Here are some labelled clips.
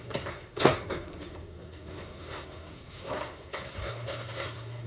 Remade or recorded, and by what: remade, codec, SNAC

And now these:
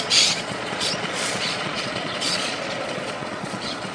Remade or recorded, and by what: remade, vocoder, Vocos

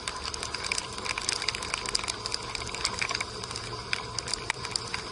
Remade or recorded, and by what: recorded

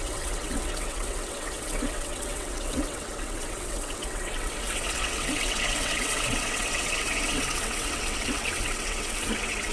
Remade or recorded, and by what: remade, vocoder, WaveNeXt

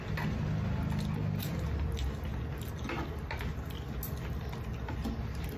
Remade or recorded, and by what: recorded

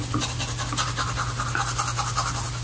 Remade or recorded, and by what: recorded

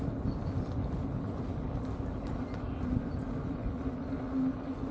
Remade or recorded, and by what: recorded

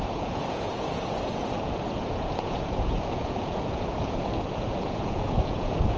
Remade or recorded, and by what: remade, vocoder, Vocos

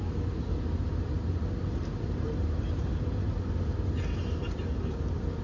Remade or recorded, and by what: recorded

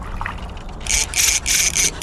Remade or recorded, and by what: recorded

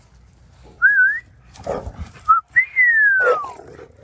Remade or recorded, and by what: recorded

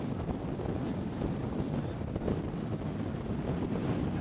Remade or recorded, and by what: recorded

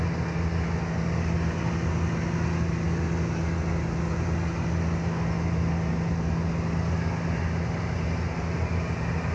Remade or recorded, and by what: recorded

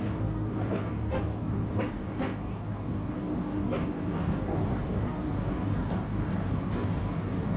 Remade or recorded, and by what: remade, codec, DAC